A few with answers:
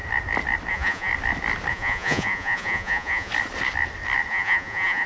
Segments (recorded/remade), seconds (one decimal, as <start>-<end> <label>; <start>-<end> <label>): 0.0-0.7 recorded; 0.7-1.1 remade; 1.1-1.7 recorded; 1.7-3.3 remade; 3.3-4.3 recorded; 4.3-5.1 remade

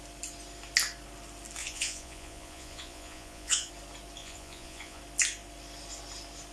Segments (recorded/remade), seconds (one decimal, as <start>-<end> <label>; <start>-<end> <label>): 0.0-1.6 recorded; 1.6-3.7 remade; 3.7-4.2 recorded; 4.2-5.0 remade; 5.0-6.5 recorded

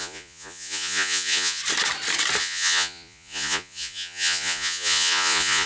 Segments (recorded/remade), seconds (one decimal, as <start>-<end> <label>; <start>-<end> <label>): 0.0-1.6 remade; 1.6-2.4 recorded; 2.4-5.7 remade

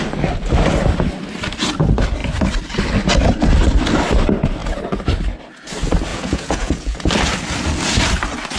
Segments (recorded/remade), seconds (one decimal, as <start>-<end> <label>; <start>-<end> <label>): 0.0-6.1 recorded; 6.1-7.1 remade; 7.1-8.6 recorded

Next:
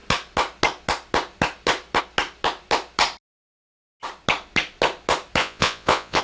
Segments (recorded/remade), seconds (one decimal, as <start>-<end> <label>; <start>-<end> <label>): 0.0-5.4 recorded; 5.4-6.2 remade

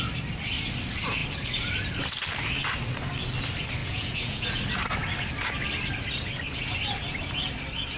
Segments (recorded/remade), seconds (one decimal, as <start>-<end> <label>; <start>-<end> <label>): 0.0-3.8 recorded; 3.8-4.6 remade; 4.6-8.0 recorded